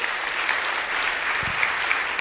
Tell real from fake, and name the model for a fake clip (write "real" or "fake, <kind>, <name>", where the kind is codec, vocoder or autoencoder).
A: real